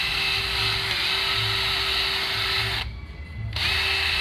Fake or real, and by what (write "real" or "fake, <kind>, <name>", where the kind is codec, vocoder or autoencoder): real